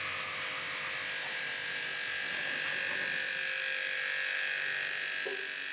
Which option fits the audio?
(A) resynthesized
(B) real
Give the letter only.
B